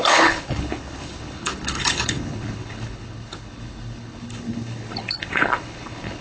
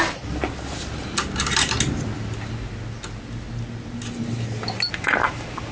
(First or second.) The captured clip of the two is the second